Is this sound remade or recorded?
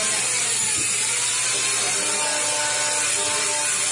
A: recorded